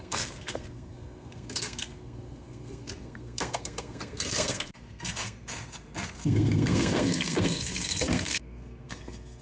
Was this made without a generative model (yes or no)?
no